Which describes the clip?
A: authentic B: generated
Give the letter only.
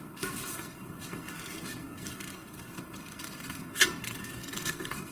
B